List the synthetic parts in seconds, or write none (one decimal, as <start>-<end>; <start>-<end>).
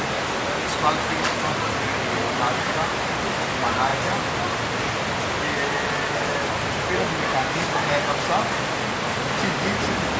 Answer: none